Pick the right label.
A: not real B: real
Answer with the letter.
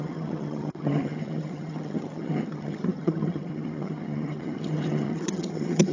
A